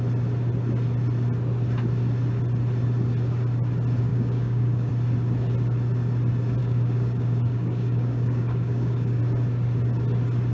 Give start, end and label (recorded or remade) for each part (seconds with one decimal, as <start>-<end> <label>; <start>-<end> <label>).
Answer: 0.0-4.1 recorded; 4.1-4.9 remade; 4.9-6.6 recorded; 6.6-9.2 remade; 9.2-10.5 recorded